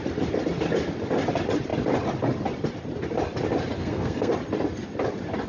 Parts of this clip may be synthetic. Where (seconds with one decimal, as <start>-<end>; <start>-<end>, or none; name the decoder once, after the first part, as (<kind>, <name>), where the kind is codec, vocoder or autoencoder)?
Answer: 3.8-4.3 (codec, SNAC)